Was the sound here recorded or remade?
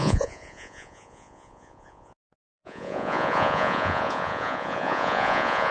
remade